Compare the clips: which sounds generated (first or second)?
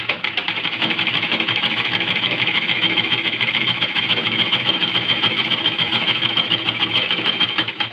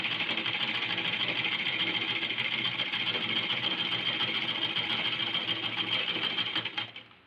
first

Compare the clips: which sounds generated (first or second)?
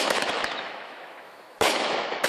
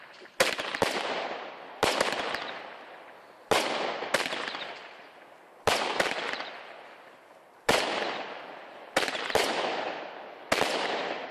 first